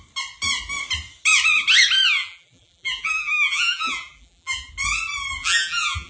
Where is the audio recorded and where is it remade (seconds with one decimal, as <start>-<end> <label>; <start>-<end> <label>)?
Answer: 0.0-2.2 recorded; 2.2-4.7 remade; 4.7-5.4 recorded; 5.4-6.1 remade